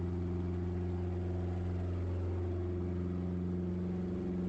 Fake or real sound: real